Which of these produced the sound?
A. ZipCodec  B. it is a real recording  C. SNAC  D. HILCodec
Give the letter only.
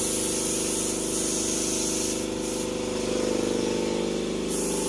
B